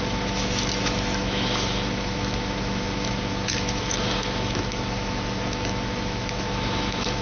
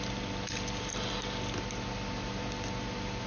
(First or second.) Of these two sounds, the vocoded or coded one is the first